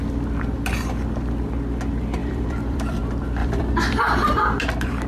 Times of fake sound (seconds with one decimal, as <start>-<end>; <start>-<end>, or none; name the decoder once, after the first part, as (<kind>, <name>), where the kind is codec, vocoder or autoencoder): 2.2-3.0 (vocoder, BigVGAN v2); 3.4-4.6

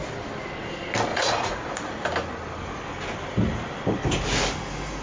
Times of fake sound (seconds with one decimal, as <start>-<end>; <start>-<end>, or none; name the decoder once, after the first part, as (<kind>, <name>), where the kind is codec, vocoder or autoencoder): 1.1-1.7 (vocoder, Vocos)